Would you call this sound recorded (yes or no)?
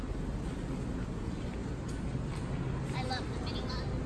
yes